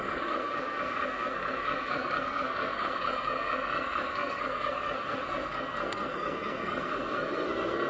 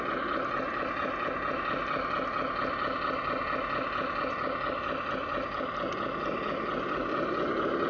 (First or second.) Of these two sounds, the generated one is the first